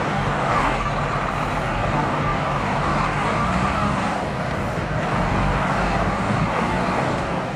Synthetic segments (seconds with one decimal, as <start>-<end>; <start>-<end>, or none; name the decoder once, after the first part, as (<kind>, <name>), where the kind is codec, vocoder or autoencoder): 0.0-0.9 (codec, DAC); 1.6-7.6